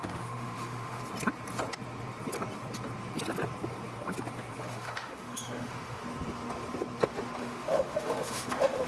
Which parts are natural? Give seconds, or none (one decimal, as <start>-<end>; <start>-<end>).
1.0-4.5; 6.0-7.4